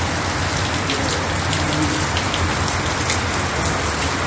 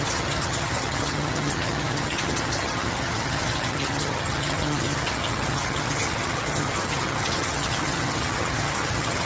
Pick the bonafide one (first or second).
first